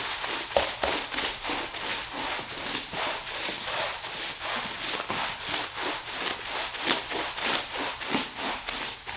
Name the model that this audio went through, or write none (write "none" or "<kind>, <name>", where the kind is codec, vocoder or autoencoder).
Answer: none